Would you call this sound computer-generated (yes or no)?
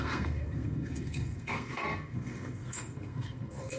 yes